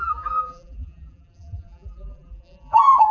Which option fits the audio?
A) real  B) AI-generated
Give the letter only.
B